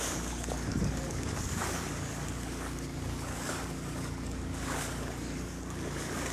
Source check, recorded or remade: remade